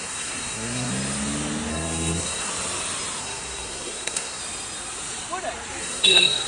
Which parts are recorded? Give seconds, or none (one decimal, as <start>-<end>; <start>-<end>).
0.9-1.7; 2.5-3.2; 4.4-5.8